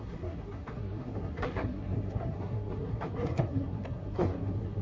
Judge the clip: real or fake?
fake